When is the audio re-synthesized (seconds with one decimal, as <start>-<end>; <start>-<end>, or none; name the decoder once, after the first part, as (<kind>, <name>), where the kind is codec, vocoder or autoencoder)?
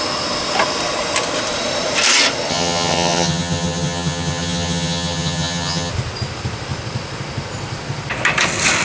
2.5-5.9 (vocoder, HiFi-GAN)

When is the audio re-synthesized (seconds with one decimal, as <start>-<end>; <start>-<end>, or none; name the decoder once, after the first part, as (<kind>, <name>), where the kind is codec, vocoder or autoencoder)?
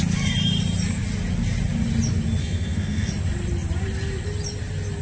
2.4-3.1 (codec, SNAC)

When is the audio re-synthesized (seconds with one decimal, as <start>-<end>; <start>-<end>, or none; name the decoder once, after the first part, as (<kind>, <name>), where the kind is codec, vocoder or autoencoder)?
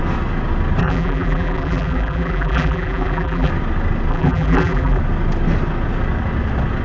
0.8-3.5 (vocoder, BigVGAN v2); 4.1-5.0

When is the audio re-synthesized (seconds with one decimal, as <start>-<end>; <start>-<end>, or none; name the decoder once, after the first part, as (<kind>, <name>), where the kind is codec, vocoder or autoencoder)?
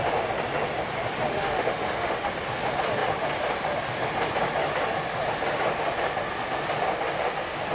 1.3-2.3 (autoencoder, DAC-VAE)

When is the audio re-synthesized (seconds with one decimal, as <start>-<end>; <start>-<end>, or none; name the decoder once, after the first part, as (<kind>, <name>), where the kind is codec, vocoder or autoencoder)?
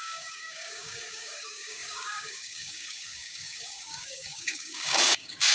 0.0-5.5 (codec, DAC)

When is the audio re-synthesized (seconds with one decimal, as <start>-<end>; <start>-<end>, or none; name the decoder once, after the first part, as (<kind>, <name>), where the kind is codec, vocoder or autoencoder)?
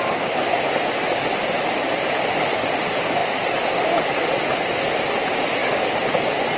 0.0-6.6 (vocoder, BigVGAN v2)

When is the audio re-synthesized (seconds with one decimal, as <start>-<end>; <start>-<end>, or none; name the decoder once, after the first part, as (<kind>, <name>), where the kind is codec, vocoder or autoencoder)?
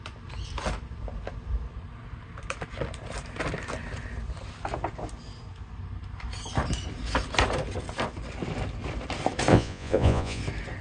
9.5-10.4 (vocoder, Vocos)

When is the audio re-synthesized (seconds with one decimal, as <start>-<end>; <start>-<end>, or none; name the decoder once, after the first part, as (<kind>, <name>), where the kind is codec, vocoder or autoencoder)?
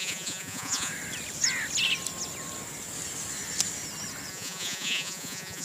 0.0-0.9 (vocoder, Vocos); 4.3-5.6